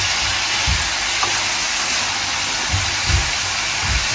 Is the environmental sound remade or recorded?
recorded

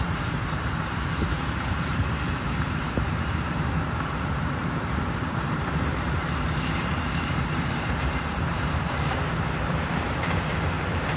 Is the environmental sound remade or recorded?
remade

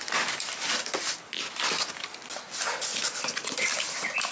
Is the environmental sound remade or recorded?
recorded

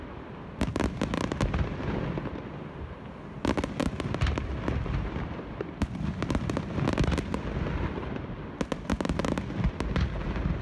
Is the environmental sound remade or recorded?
recorded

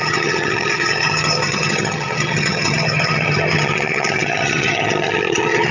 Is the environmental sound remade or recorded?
remade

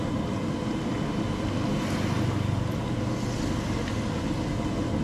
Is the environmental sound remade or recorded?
recorded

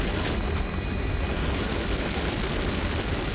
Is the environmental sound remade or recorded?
recorded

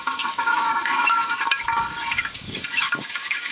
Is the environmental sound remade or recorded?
remade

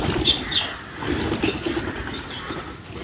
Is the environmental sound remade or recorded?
recorded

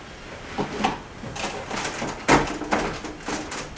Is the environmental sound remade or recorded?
recorded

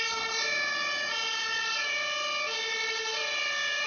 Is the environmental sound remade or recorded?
remade